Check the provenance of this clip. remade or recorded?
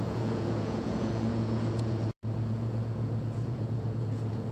remade